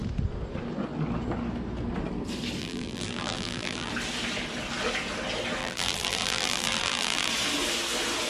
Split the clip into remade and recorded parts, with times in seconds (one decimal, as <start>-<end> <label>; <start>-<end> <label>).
0.0-2.6 recorded; 2.6-3.9 remade; 3.9-5.6 recorded; 5.6-7.3 remade; 7.3-8.3 recorded